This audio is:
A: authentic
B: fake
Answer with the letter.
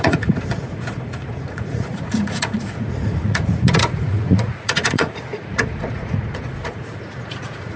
B